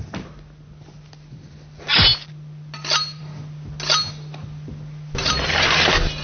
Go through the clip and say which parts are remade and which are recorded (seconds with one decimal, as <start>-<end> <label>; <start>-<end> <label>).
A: 0.0-6.2 recorded